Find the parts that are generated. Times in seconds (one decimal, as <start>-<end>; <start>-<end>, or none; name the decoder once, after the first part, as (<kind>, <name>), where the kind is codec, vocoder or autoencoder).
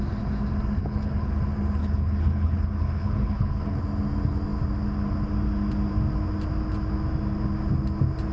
0.8-1.4 (codec, HILCodec); 1.8-3.8